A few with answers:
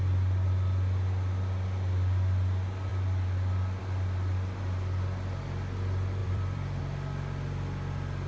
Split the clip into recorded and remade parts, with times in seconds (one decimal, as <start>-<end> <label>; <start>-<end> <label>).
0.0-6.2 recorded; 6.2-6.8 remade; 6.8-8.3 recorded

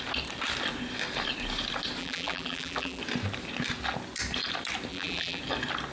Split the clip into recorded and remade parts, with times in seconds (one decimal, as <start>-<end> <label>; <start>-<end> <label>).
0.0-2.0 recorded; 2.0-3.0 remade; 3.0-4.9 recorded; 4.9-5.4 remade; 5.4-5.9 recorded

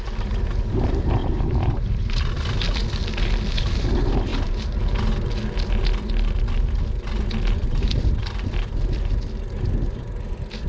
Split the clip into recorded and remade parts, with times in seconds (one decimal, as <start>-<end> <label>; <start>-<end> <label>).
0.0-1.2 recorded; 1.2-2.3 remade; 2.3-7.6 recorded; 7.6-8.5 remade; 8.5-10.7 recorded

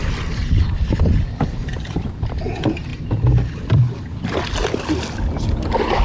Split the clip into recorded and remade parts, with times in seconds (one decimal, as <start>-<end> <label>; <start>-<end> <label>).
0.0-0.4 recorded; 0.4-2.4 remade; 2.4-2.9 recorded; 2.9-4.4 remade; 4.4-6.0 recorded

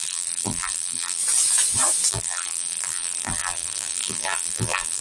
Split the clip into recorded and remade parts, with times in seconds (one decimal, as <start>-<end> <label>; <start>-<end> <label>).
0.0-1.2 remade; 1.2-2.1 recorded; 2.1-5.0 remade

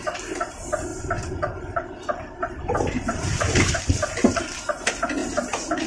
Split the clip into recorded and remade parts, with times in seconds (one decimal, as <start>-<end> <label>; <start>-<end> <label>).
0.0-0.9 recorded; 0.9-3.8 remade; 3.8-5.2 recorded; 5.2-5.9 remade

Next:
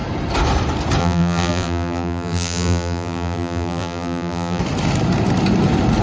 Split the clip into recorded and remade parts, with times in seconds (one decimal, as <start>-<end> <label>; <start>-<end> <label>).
0.0-1.0 recorded; 1.0-4.6 remade; 4.6-6.0 recorded